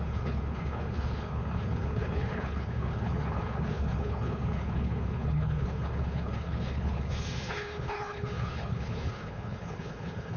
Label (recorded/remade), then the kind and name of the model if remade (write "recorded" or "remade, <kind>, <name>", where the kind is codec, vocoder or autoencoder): remade, codec, HILCodec